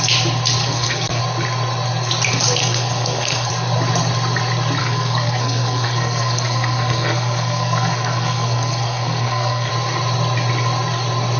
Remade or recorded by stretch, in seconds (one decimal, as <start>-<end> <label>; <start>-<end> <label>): 0.0-0.6 recorded; 0.6-1.2 remade; 1.2-2.6 recorded; 2.6-3.5 remade; 3.5-4.8 recorded; 4.8-9.7 remade; 9.7-11.4 recorded